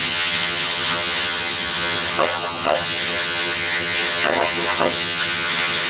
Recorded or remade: remade